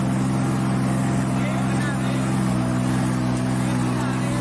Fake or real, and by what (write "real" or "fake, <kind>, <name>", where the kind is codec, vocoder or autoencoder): real